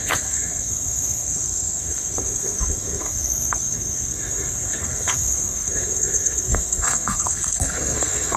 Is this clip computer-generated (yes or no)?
yes